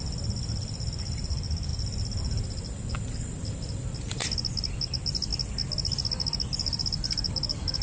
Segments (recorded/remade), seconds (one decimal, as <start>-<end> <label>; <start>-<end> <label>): 0.0-4.2 remade; 4.2-4.7 recorded; 4.7-5.3 remade; 5.3-6.5 recorded; 6.5-7.8 remade